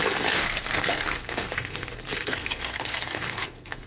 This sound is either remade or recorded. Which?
remade